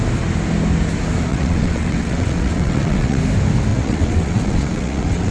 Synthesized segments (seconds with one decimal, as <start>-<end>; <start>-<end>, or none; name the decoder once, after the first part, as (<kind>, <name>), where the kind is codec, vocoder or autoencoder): 1.3-3.2 (vocoder, WaveNeXt); 3.7-5.3